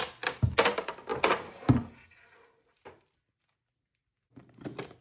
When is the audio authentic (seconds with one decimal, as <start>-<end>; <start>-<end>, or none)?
0.0-5.0